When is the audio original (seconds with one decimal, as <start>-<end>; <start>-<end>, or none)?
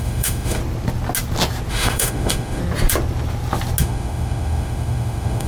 0.6-1.7; 2.6-3.8